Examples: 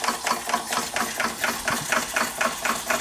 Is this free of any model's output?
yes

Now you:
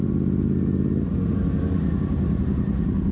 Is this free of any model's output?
yes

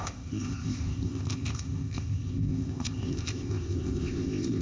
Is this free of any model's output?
no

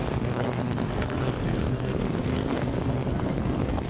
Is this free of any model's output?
no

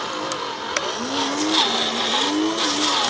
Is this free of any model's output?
yes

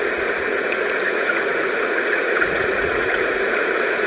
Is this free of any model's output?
no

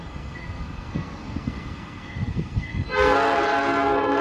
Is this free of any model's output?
no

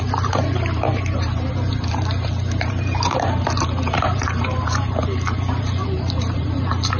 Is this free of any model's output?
no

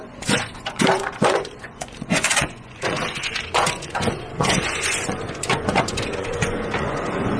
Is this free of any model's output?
no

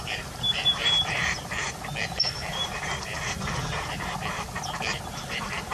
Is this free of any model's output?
no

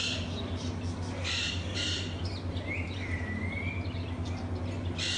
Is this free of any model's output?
yes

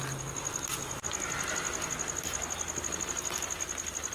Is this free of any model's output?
yes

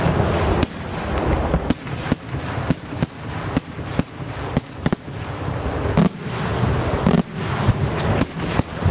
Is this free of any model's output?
yes